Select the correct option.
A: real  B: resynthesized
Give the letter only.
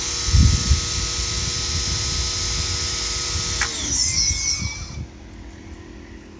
A